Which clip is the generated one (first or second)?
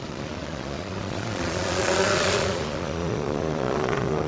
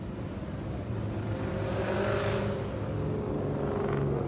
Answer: first